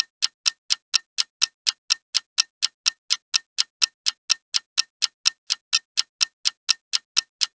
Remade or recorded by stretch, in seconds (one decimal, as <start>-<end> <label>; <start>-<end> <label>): 0.0-7.6 recorded